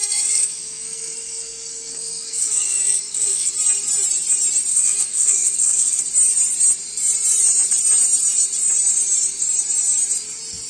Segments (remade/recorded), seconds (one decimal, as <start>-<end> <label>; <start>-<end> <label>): 0.0-3.5 remade; 3.5-4.7 recorded; 4.7-6.0 remade; 6.0-10.7 recorded